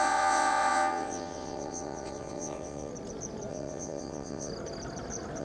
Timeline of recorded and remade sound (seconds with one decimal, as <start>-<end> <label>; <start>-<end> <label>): 0.0-2.9 remade; 2.9-3.5 recorded; 3.5-4.5 remade; 4.5-5.4 recorded